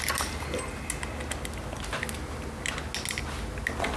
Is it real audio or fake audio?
real